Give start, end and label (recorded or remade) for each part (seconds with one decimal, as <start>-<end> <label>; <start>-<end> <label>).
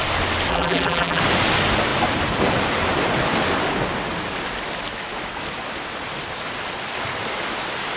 0.0-0.5 recorded; 0.5-1.2 remade; 1.2-8.0 recorded